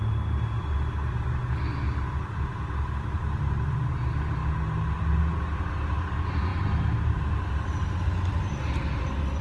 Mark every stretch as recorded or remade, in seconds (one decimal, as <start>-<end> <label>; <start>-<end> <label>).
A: 0.0-9.4 recorded